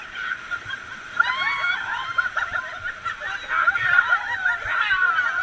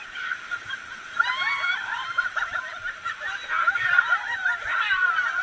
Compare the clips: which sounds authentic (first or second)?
first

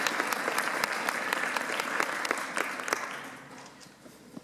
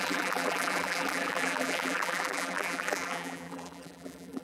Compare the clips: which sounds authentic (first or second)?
first